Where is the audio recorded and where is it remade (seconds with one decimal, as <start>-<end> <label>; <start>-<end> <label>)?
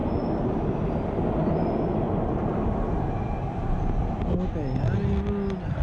0.0-5.8 recorded